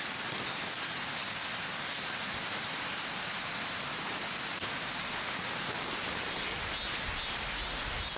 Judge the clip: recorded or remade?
recorded